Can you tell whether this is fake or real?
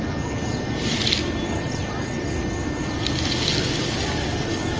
real